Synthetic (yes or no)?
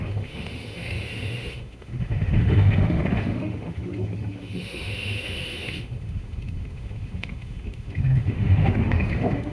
yes